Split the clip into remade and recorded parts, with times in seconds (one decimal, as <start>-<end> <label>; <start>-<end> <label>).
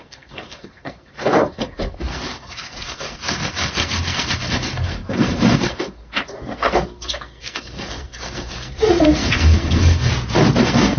0.0-10.1 remade; 10.1-10.6 recorded; 10.6-11.0 remade